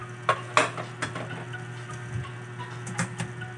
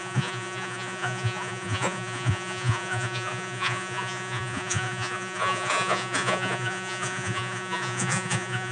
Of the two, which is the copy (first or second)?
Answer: second